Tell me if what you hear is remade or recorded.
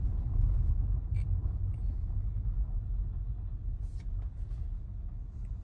recorded